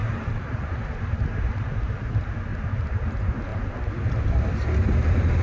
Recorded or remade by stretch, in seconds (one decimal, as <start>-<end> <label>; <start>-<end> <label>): 0.0-1.9 remade; 1.9-3.5 recorded; 3.5-4.2 remade; 4.2-5.4 recorded